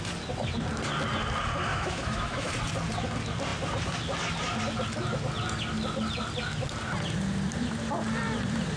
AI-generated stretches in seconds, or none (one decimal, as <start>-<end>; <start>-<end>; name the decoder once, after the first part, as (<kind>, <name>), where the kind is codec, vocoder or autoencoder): 1.7-2.5 (autoencoder, DAC-VAE)